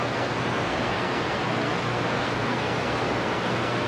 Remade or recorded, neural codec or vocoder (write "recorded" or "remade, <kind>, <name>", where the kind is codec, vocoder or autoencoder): remade, codec, SNAC